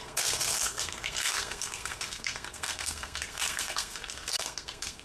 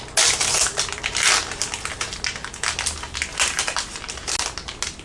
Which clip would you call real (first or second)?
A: second